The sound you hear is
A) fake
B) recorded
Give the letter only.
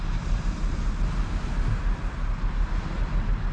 B